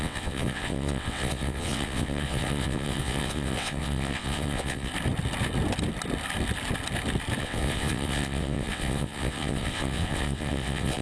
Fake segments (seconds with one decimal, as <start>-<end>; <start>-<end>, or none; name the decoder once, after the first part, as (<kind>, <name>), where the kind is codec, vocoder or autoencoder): 0.0-4.9 (vocoder, WaveNeXt); 7.4-11.0

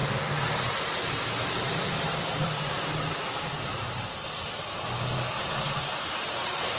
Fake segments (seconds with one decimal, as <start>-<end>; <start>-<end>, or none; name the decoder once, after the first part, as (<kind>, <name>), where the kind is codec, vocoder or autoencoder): 0.0-4.1 (vocoder, BigVGAN v2)

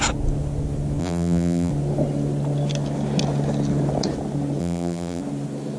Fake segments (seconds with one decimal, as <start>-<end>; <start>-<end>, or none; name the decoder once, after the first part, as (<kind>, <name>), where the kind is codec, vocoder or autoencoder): 1.0-1.7 (vocoder, BigVGAN v2); 4.6-5.2

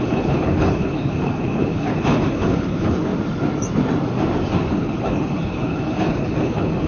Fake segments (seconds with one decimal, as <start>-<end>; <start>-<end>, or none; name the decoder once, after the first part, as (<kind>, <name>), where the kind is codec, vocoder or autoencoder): 0.0-3.1 (codec, HILCodec); 4.7-6.9

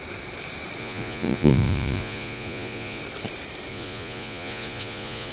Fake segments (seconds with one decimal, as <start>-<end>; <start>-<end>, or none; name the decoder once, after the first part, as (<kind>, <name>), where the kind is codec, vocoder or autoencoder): 0.8-3.0 (vocoder, Vocos); 3.7-5.3